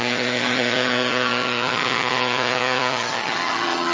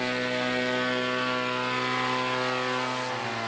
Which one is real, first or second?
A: second